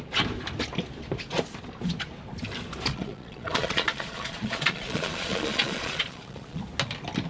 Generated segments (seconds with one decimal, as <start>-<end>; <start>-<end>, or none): 2.9-6.6